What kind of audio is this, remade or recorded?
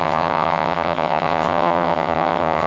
remade